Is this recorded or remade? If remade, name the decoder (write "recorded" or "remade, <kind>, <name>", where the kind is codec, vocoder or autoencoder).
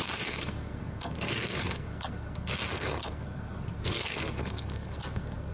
remade, codec, SNAC